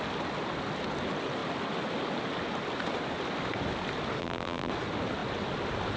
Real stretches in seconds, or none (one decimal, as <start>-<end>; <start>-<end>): 0.0-4.2; 4.7-6.0